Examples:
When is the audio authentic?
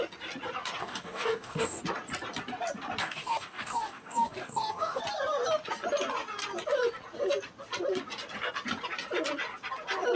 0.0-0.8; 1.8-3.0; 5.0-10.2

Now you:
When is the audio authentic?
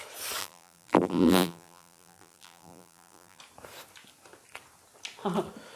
0.0-0.4; 3.4-5.8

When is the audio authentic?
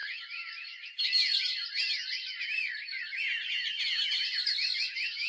2.7-5.3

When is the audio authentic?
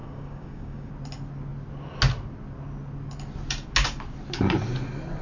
0.9-5.2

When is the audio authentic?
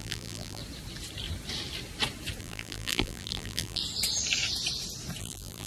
0.6-2.4; 3.8-5.2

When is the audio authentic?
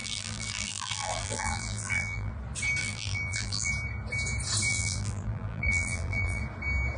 2.3-2.8; 3.7-4.7; 6.4-7.0